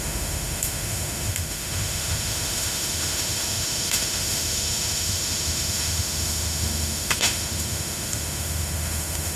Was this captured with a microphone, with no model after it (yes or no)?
no